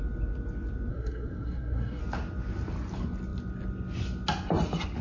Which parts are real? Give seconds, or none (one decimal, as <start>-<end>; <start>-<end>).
0.0-0.9; 2.0-5.0